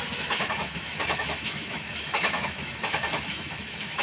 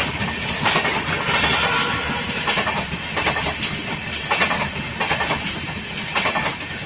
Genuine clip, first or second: second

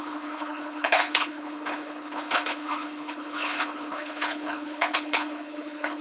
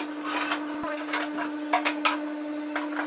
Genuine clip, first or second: second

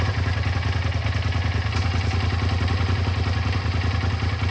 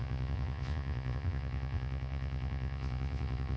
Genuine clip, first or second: first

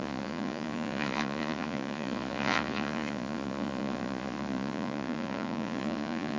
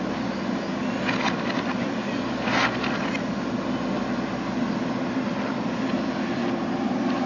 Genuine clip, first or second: second